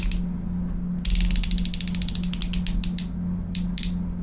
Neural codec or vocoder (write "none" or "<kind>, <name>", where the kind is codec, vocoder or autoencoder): none